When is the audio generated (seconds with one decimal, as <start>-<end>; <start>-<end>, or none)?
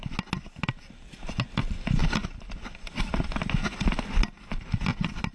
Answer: none